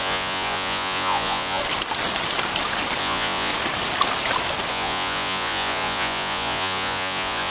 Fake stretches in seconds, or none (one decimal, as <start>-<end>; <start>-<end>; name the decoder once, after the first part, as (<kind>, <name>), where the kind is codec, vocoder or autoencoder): 0.0-1.6 (vocoder, Vocos); 3.0-3.5; 4.7-7.5